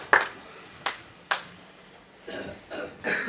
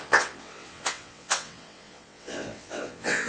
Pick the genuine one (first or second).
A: first